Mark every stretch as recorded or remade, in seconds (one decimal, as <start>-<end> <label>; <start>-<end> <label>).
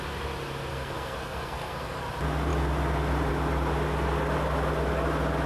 0.0-0.7 recorded; 0.7-2.1 remade; 2.1-5.5 recorded